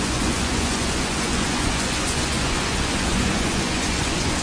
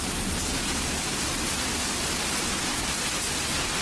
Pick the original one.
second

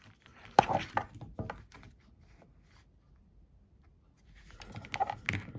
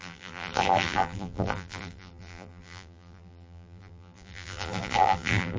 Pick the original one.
first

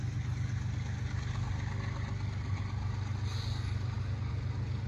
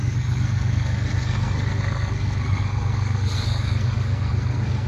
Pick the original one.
first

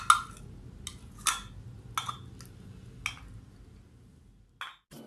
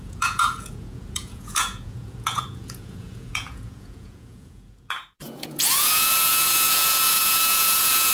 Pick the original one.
first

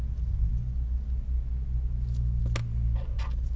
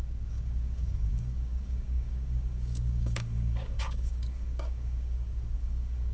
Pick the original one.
first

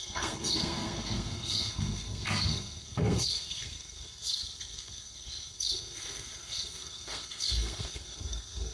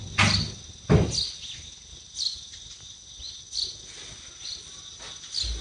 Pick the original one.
second